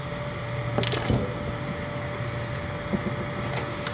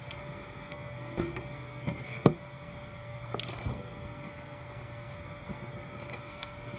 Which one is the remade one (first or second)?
second